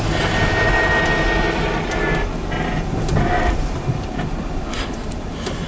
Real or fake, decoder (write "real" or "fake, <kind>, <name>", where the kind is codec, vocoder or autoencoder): real